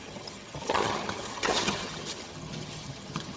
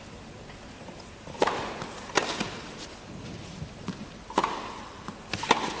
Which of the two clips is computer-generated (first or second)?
first